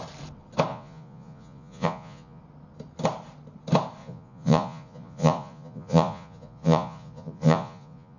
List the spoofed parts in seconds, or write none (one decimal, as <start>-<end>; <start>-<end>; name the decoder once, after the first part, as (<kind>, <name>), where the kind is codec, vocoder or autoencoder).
0.7-2.4 (vocoder, Vocos); 4.0-8.2